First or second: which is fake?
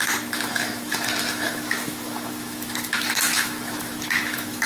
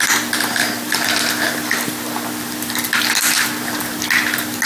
first